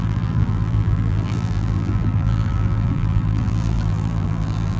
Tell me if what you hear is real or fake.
fake